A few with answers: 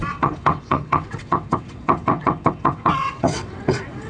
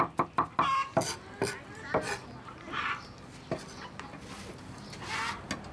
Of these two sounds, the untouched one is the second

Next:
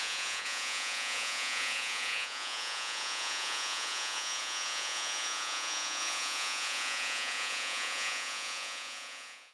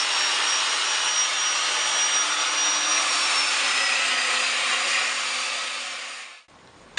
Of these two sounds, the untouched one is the second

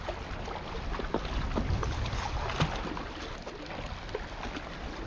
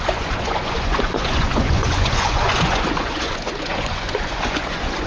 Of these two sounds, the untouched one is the first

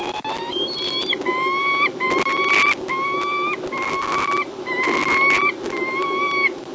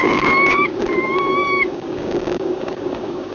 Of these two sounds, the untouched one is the first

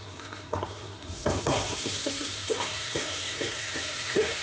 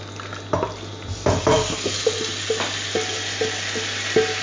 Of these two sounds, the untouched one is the second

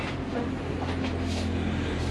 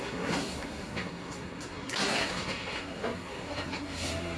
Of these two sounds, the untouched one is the first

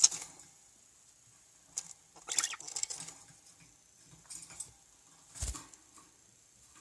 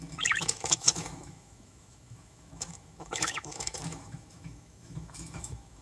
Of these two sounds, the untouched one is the first